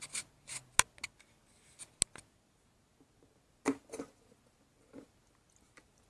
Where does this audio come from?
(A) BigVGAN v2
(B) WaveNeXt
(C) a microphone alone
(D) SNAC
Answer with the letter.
C